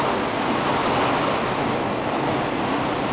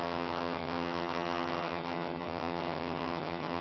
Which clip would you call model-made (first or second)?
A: second